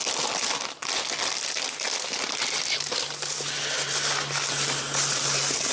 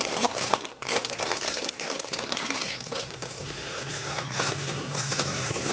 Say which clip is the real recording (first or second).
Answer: first